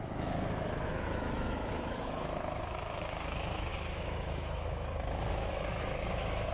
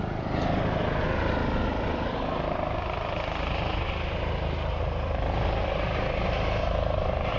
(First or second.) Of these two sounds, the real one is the second